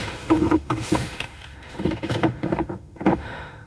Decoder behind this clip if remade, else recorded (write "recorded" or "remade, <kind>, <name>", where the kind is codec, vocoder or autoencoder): remade, autoencoder, DAC-VAE